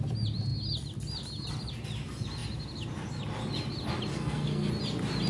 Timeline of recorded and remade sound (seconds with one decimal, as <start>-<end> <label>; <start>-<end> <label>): 0.0-4.1 recorded; 4.1-4.7 remade; 4.7-5.3 recorded